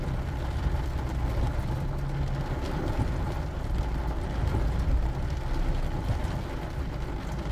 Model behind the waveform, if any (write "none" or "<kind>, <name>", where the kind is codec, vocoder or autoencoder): none